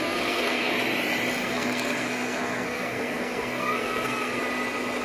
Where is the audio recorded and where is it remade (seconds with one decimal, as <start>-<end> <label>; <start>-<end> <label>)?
0.0-0.7 remade; 0.7-1.4 recorded; 1.4-4.4 remade; 4.4-5.0 recorded